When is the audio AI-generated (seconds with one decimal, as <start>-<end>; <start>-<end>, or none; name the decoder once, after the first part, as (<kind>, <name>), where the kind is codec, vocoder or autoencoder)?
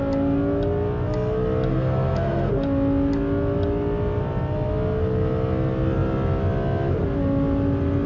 1.7-2.5 (codec, SNAC)